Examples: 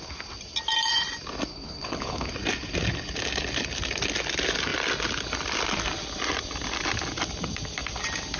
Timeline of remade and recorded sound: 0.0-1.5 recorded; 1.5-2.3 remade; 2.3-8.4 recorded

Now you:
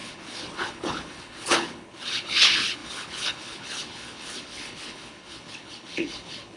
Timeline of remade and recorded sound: 0.0-6.6 remade

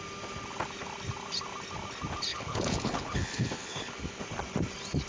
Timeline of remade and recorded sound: 0.0-2.3 recorded; 2.3-4.2 remade; 4.2-5.1 recorded